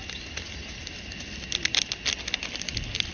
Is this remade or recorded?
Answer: recorded